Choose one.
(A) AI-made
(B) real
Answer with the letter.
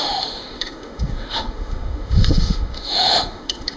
A